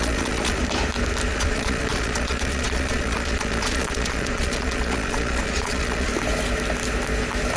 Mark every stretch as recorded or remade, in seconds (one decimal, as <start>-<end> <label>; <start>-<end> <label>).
0.0-0.6 remade; 0.6-1.3 recorded; 1.3-6.1 remade; 6.1-7.6 recorded